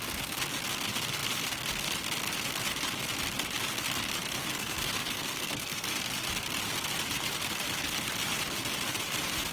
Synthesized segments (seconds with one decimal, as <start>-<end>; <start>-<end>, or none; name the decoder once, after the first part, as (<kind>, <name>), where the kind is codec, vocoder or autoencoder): 4.4-6.0 (codec, SNAC)